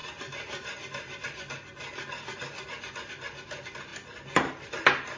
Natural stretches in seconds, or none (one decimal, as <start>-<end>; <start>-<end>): 0.0-5.2